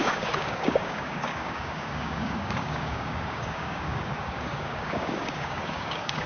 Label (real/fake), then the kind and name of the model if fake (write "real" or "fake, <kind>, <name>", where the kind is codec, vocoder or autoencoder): fake, codec, DAC